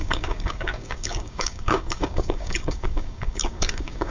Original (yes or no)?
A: no